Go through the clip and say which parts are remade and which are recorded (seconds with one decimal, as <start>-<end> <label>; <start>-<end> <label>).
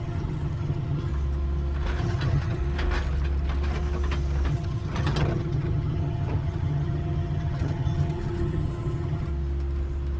0.0-1.1 remade; 1.1-2.0 recorded; 2.0-2.6 remade; 2.6-4.5 recorded; 4.5-9.3 remade; 9.3-10.2 recorded